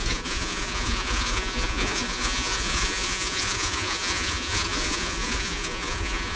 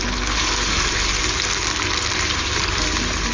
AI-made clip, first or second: first